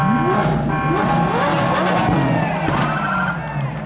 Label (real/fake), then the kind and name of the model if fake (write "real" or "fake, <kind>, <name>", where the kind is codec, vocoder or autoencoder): real